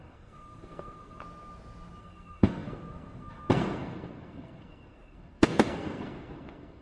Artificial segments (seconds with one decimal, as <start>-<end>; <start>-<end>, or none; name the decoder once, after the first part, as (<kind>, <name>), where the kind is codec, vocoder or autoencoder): 0.0-1.2 (codec, SNAC); 2.0-6.8

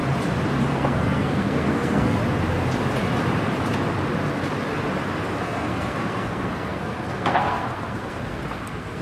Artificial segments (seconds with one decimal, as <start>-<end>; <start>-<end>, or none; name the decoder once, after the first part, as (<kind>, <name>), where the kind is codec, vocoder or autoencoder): 0.7-2.2 (codec, SNAC); 5.4-9.0

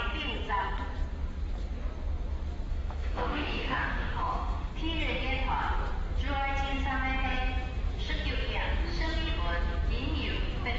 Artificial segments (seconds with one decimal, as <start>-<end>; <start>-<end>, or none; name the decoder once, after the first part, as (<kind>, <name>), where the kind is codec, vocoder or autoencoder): 2.7-4.7 (autoencoder, DAC-VAE)

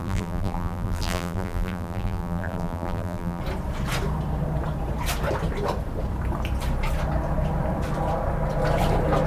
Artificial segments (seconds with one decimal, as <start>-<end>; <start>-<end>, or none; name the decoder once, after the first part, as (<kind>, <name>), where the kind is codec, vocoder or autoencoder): 0.0-3.4 (vocoder, BigVGAN v2)

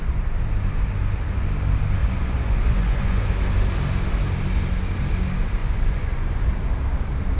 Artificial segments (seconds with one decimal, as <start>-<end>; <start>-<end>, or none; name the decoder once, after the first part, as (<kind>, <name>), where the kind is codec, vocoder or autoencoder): 2.0-3.3 (vocoder, Vocos); 5.6-6.4

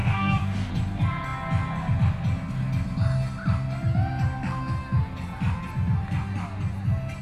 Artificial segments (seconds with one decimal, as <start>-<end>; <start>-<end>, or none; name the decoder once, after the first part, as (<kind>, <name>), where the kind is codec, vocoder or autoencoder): 0.0-0.7 (codec, DAC)